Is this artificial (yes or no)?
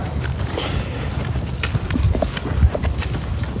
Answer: no